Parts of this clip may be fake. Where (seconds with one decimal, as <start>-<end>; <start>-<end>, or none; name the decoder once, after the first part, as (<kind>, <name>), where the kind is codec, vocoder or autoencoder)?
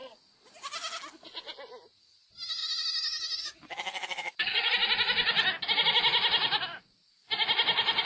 3.9-4.7 (codec, DAC)